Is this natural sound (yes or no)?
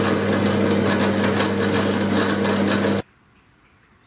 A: yes